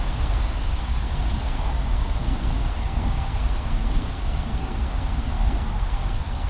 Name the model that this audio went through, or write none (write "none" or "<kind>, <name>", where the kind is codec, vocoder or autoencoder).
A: codec, SNAC